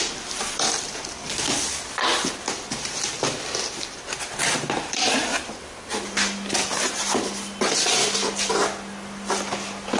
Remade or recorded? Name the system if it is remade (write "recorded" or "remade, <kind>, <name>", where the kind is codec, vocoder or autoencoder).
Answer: recorded